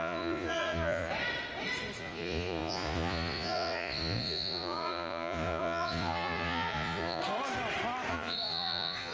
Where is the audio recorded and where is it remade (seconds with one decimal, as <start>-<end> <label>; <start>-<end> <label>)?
0.0-1.1 remade; 1.1-2.0 recorded; 2.0-7.2 remade; 7.2-8.1 recorded; 8.1-9.1 remade